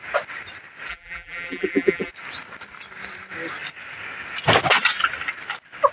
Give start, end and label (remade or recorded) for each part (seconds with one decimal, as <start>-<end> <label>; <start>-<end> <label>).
0.0-0.9 recorded; 0.9-2.1 remade; 2.1-5.9 recorded